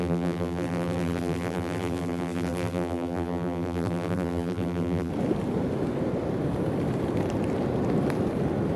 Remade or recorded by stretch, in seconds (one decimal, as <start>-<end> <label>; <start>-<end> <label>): 0.0-5.1 remade; 5.1-8.8 recorded